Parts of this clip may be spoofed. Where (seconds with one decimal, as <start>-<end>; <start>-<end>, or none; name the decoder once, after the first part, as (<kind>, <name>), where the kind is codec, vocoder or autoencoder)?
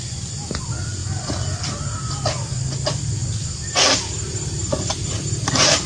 none